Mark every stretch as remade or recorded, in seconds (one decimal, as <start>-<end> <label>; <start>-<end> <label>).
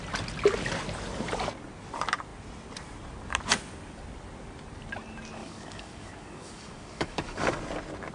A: 0.0-5.4 recorded; 5.4-7.6 remade; 7.6-8.1 recorded